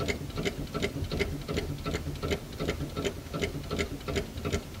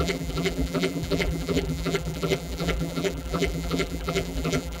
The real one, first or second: first